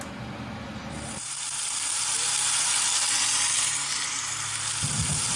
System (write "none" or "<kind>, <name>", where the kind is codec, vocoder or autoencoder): none